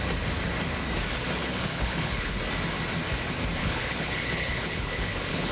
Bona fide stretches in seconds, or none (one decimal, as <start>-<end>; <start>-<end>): 0.0-1.4; 2.4-3.6